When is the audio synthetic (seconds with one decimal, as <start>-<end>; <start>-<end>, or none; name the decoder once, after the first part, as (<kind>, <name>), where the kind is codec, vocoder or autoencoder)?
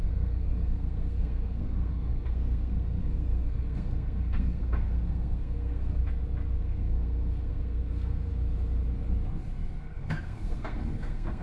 0.0-6.0 (codec, SNAC); 6.6-8.3; 9.8-11.4